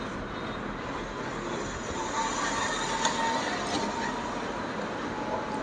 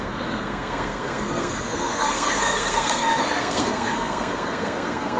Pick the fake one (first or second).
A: second